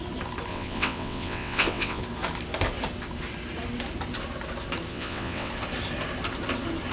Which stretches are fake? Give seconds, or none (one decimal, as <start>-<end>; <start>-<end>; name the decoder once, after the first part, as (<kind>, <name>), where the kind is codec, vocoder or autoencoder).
0.5-2.0 (vocoder, WaveNeXt); 4.9-5.5

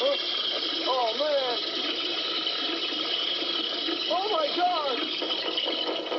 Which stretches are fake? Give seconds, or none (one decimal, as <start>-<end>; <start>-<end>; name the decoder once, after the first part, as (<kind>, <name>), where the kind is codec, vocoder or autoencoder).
none

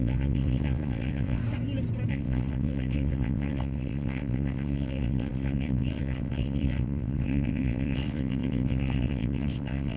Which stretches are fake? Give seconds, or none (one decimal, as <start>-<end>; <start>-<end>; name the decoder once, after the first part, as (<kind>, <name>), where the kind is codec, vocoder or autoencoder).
0.0-1.4 (vocoder, WaveNeXt); 2.1-10.0

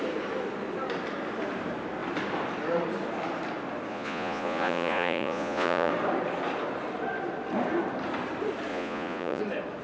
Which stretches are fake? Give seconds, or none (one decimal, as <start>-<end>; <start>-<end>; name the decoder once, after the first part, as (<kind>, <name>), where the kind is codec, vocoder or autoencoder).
3.9-5.9 (vocoder, Vocos); 8.7-9.4

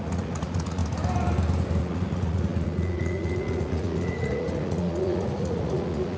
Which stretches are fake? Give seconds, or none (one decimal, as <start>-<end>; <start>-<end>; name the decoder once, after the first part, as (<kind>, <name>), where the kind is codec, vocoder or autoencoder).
0.0-0.8 (vocoder, Vocos); 1.8-6.2